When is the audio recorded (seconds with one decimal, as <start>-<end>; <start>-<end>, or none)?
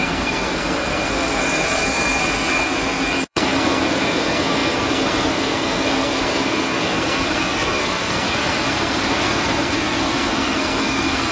none